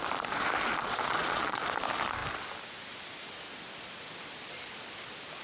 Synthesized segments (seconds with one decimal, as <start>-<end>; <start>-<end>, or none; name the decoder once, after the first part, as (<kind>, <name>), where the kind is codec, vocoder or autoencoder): 0.7-1.6 (vocoder, Vocos)